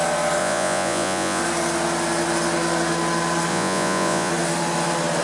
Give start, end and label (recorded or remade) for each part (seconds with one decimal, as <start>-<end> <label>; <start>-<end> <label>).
0.0-0.4 recorded; 0.4-1.4 remade; 1.4-3.5 recorded; 3.5-4.3 remade; 4.3-5.2 recorded